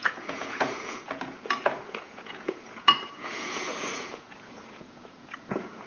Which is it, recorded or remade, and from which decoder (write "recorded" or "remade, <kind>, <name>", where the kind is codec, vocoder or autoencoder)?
remade, vocoder, Vocos